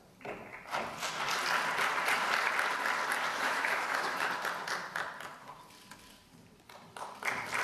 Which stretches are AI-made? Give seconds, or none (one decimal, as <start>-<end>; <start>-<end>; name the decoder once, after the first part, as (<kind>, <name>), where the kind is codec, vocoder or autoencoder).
3.3-4.3 (autoencoder, DAC-VAE)